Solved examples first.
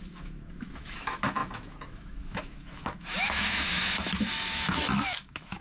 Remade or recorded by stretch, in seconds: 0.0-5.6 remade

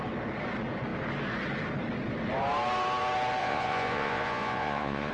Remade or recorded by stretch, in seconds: 0.0-3.4 recorded; 3.4-5.1 remade

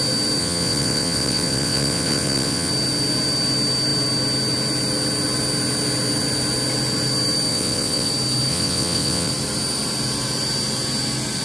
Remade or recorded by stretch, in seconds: 0.0-0.4 recorded; 0.4-2.7 remade; 2.7-7.5 recorded; 7.5-8.1 remade; 8.1-8.5 recorded; 8.5-9.3 remade; 9.3-11.4 recorded

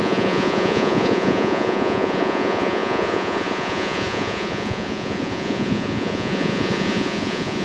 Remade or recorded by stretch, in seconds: 0.0-7.6 remade

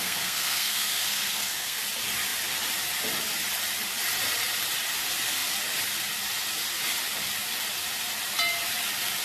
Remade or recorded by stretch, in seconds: 0.0-1.8 remade; 1.8-9.2 recorded

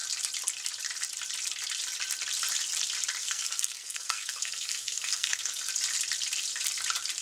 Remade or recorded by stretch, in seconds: 0.0-3.2 recorded; 3.2-5.7 remade; 5.7-7.2 recorded